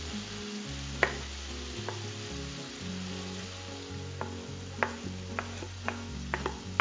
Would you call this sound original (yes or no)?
yes